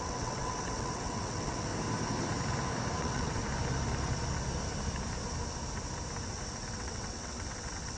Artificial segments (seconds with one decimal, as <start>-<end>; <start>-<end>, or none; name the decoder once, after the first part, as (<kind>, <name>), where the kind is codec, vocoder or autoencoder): 0.0-1.7 (vocoder, WaveNeXt); 3.0-3.4; 6.7-8.0